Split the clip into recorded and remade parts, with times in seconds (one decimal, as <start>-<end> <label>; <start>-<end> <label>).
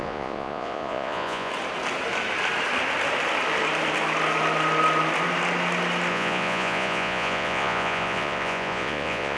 0.0-1.5 remade; 1.5-6.1 recorded; 6.1-9.4 remade